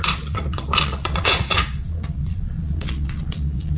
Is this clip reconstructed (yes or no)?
yes